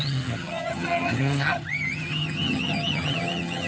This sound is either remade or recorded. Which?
remade